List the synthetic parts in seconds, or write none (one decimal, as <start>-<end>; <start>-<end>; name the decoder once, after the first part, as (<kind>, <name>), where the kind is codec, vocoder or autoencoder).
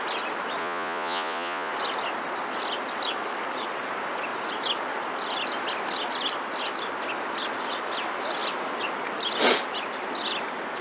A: 0.6-1.7 (vocoder, Vocos)